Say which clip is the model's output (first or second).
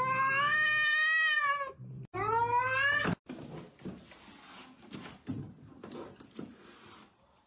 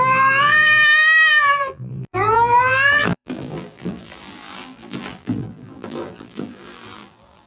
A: second